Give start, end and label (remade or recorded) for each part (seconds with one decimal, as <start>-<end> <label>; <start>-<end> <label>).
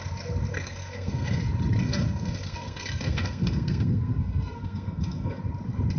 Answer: 0.0-0.5 recorded; 0.5-1.4 remade; 1.4-1.8 recorded; 1.8-5.4 remade; 5.4-6.0 recorded